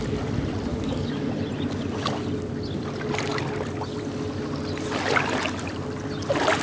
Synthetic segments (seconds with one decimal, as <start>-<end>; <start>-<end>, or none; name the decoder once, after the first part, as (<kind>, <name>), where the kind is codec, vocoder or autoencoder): 0.7-1.3 (codec, DAC)